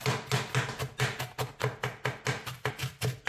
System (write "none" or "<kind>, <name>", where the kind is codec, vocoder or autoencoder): none